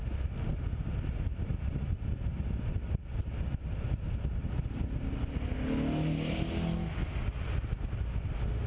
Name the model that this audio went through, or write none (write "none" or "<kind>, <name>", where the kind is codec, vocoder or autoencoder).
none